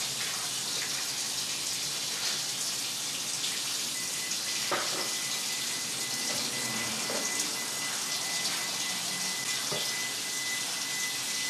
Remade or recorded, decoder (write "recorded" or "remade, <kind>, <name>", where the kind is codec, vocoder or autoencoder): recorded